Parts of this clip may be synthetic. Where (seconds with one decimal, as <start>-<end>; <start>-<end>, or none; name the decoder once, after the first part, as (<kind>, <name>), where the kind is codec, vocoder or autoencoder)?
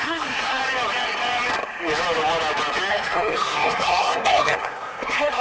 0.0-0.6 (codec, SNAC); 2.9-5.4